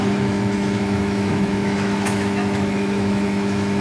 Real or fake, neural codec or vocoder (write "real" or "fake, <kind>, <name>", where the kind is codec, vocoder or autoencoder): fake, autoencoder, DAC-VAE